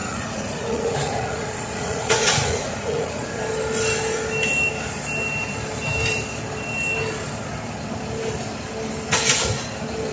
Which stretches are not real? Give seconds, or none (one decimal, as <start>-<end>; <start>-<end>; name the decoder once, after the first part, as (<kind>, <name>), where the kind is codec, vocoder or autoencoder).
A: 0.0-3.4 (vocoder, Vocos)